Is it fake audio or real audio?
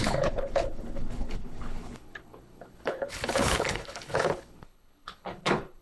fake